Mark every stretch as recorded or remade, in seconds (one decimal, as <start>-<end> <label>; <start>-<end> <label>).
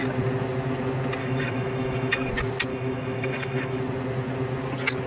0.0-1.2 recorded; 1.2-2.3 remade; 2.3-2.7 recorded; 2.7-3.8 remade; 3.8-5.1 recorded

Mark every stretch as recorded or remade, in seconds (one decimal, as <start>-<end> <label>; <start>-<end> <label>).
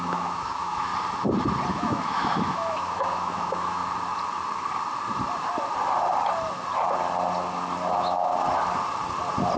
0.0-0.9 remade; 0.9-1.7 recorded; 1.7-3.8 remade; 3.8-7.9 recorded; 7.9-8.3 remade; 8.3-9.6 recorded